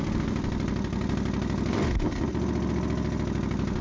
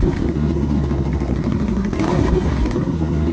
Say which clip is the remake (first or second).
second